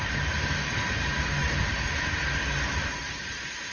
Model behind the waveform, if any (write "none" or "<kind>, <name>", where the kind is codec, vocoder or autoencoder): none